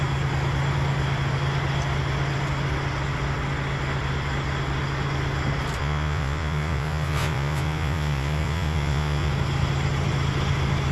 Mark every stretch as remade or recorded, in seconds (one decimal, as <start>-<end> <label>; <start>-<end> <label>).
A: 0.0-5.8 recorded; 5.8-9.3 remade; 9.3-10.9 recorded